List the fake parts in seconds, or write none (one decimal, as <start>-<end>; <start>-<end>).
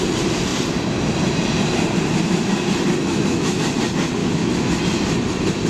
3.0-3.6; 4.2-4.8